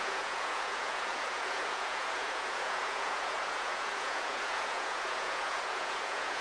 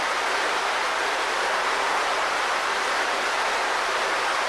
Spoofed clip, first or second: first